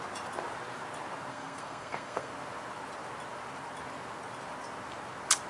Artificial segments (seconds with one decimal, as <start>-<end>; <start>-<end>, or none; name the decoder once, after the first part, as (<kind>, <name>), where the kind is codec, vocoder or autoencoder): 1.3-2.3 (codec, SNAC)